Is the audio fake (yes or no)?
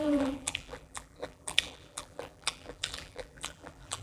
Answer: yes